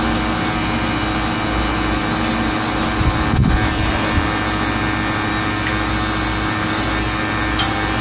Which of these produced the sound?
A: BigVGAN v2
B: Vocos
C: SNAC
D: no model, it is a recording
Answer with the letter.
D